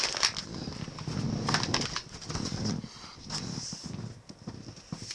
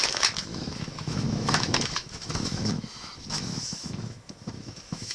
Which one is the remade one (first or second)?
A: second